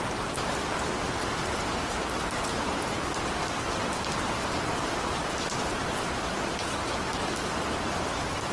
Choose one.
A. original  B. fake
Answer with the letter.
A